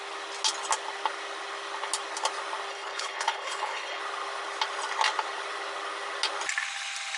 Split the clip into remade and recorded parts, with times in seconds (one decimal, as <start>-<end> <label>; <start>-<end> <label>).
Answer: 0.0-2.7 recorded; 2.7-4.0 remade; 4.0-7.2 recorded